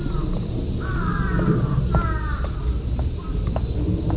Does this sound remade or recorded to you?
recorded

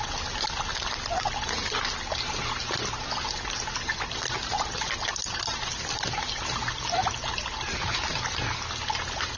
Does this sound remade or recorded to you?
recorded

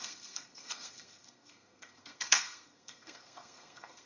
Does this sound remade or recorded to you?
remade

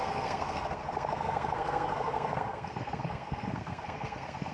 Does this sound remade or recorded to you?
remade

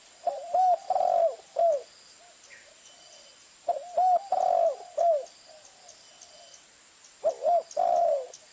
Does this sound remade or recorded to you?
recorded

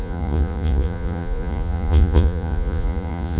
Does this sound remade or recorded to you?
remade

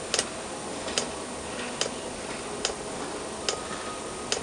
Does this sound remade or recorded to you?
recorded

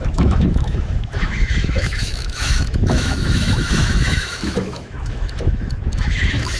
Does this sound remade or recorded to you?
remade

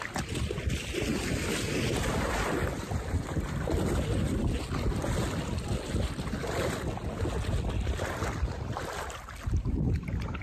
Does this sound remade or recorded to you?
recorded